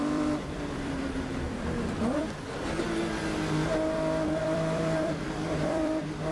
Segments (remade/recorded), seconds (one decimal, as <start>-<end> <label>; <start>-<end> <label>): 0.0-2.2 remade; 2.2-4.4 recorded; 4.4-6.3 remade